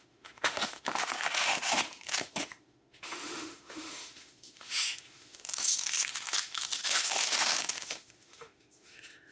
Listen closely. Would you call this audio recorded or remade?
remade